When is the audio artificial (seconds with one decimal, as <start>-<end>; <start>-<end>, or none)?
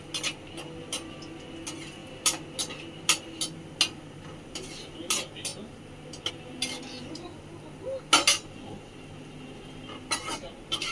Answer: none